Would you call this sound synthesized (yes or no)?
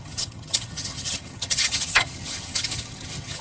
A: yes